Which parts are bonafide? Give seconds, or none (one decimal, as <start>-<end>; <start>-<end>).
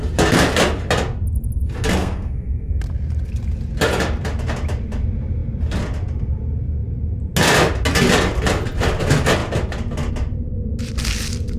0.0-2.0; 2.7-11.6